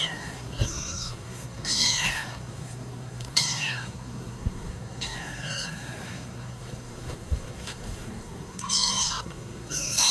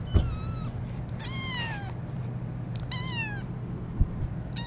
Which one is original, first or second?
second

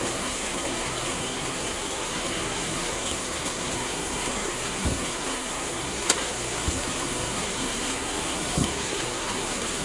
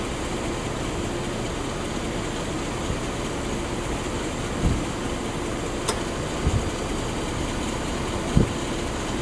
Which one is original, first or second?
second